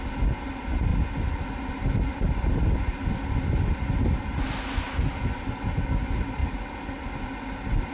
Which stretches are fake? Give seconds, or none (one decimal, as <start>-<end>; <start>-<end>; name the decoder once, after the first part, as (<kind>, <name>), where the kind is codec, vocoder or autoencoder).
none